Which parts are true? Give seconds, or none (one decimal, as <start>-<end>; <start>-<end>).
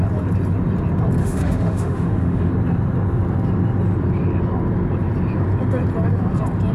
0.0-1.2; 2.5-6.7